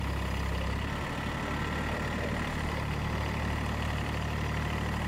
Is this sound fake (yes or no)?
no